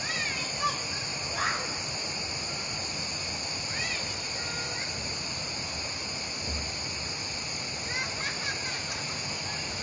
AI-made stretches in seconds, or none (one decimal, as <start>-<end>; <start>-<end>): 8.7-9.3